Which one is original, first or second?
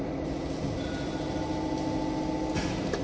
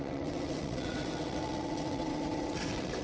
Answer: first